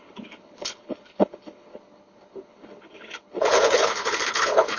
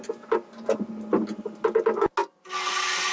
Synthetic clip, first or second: first